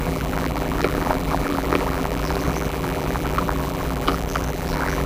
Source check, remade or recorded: remade